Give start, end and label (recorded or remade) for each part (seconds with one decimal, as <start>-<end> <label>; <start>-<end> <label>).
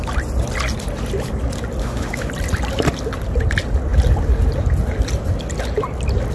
0.0-1.8 recorded; 1.8-2.3 remade; 2.3-6.3 recorded